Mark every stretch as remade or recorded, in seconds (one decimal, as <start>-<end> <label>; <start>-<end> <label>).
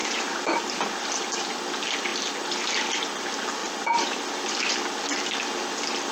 0.0-1.5 remade; 1.5-2.1 recorded; 2.1-3.2 remade; 3.2-3.6 recorded; 3.6-5.6 remade; 5.6-6.1 recorded